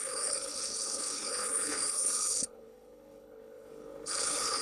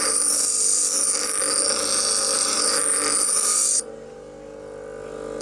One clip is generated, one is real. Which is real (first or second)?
second